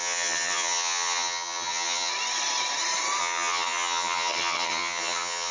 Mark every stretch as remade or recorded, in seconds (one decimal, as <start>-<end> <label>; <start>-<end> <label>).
0.0-2.1 remade; 2.1-3.2 recorded; 3.2-5.5 remade